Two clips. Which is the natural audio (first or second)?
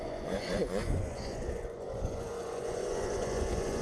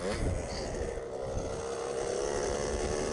second